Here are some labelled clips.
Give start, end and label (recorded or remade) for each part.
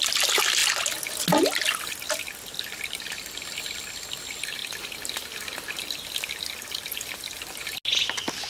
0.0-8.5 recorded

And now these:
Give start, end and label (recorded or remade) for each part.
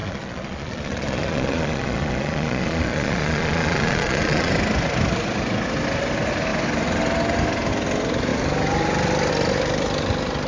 0.0-4.5 remade; 4.5-10.5 recorded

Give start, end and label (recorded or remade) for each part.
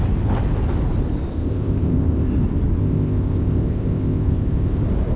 0.0-1.3 recorded; 1.3-2.3 remade; 2.3-2.8 recorded; 2.8-4.8 remade; 4.8-5.2 recorded